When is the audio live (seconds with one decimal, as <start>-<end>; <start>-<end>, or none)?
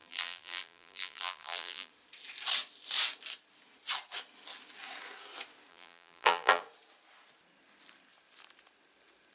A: 1.9-5.7; 6.6-9.3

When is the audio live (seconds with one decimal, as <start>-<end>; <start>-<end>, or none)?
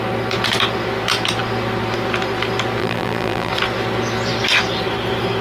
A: 0.0-2.8; 3.5-5.4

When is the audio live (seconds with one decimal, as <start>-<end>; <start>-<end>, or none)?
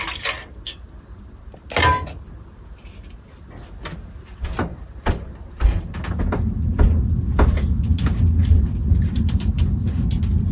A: 0.0-4.7; 5.8-8.4; 9.9-10.5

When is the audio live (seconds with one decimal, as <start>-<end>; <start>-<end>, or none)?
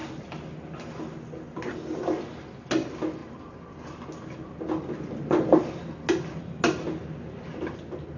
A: 0.0-8.2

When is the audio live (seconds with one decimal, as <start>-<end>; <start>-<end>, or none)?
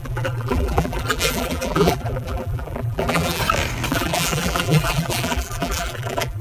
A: 3.4-3.9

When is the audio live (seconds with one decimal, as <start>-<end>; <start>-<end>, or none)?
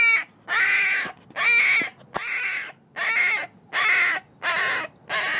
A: 0.0-5.4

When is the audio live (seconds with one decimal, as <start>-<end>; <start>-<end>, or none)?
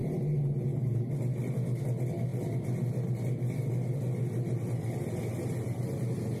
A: 1.1-4.2